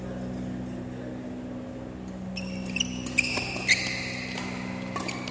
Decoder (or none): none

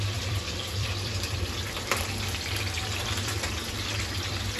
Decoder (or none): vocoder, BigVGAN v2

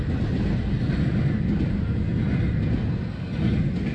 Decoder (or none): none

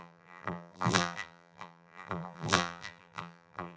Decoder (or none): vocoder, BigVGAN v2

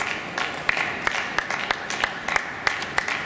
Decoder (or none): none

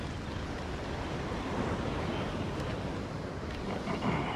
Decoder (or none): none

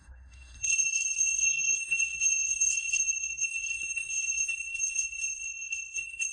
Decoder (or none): codec, SNAC